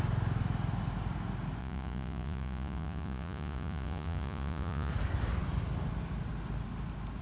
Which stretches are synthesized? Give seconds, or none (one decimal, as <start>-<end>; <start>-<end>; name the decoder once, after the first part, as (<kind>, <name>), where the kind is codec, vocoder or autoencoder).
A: 1.6-4.9 (vocoder, Vocos)